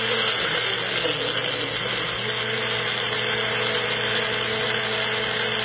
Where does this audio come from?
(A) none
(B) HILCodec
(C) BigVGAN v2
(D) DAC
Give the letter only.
A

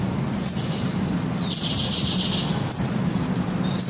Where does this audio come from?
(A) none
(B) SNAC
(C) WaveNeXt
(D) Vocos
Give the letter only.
A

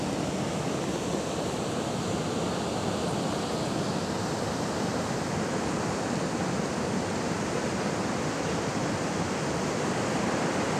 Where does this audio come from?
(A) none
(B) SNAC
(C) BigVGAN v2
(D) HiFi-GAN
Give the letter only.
A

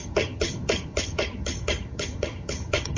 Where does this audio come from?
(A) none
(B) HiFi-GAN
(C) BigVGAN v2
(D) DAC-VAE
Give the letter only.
B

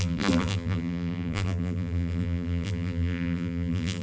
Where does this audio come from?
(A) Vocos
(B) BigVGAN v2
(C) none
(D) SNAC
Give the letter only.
B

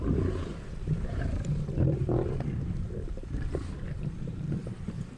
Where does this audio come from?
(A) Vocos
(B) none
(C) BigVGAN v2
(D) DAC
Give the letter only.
C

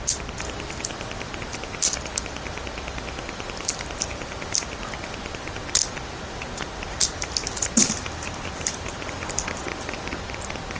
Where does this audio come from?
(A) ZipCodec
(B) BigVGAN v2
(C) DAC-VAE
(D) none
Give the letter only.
D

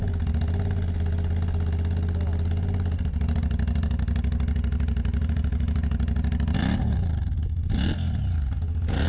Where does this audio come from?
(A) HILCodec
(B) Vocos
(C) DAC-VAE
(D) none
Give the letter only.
D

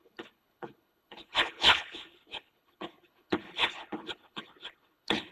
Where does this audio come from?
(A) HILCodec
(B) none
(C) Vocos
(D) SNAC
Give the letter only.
A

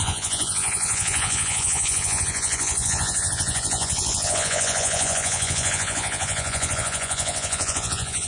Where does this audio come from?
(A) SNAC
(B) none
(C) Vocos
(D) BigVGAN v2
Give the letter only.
C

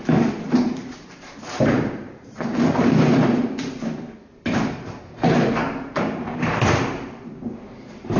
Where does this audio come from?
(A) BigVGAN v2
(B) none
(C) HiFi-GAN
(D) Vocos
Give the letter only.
A